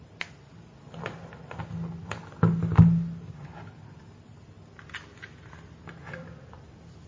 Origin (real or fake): real